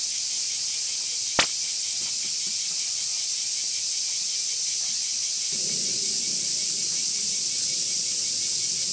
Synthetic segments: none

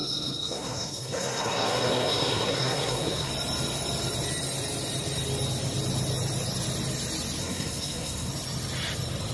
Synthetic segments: 0.0-3.3; 7.4-8.3

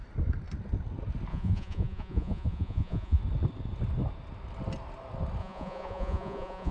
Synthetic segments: 1.3-3.2; 5.4-6.7

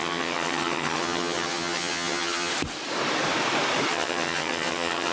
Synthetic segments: 0.0-2.5; 3.9-5.1

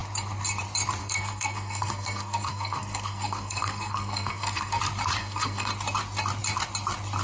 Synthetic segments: 1.0-4.8; 5.2-5.7

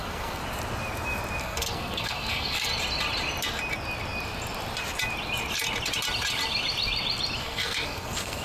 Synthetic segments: 0.0-0.4; 1.4-2.7; 7.4-8.4

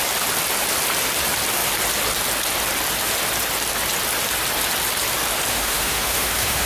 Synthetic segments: 5.5-6.7